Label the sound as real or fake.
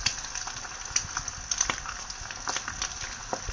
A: real